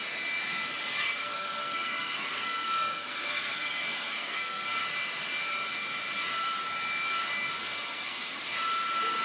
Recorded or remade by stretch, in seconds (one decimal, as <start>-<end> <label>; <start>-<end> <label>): 0.0-1.0 recorded; 1.0-4.8 remade; 4.8-7.6 recorded; 7.6-8.4 remade; 8.4-9.2 recorded